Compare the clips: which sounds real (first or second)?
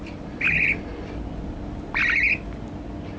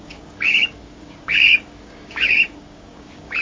first